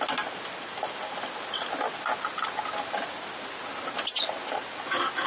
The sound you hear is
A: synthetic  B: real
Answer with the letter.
B